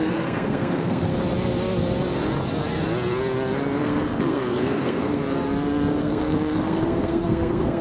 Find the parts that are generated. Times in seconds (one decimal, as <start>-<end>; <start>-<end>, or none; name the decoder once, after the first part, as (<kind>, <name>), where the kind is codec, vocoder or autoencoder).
0.0-1.1 (codec, SNAC); 3.8-5.2; 6.0-7.8